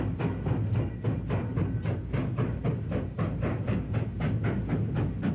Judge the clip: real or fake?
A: real